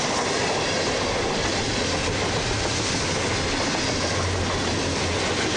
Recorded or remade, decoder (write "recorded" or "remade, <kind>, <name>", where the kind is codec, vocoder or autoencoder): recorded